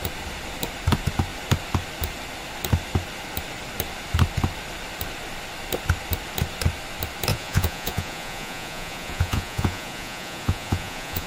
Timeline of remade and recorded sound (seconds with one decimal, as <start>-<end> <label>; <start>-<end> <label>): 0.0-7.3 recorded; 7.3-11.3 remade